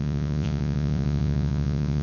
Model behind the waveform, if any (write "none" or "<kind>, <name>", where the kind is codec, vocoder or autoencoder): vocoder, Vocos